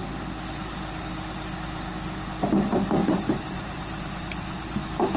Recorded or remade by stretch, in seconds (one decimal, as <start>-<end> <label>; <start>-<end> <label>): 0.0-3.0 recorded; 3.0-5.2 remade